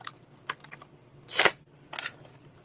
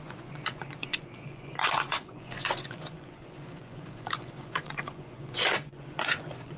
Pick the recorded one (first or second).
first